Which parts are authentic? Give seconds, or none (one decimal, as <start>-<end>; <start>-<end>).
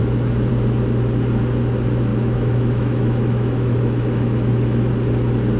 0.0-2.1; 4.9-5.6